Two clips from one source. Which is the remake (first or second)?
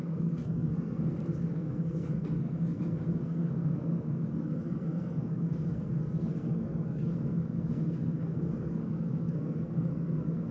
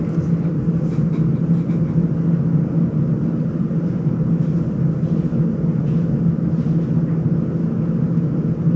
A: first